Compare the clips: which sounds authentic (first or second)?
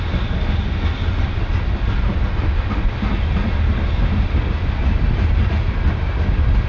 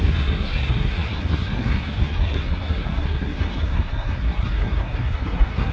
first